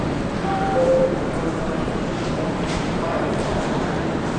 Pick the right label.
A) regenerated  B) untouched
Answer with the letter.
A